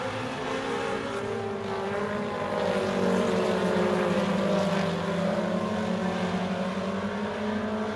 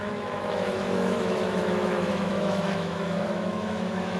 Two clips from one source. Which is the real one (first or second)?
first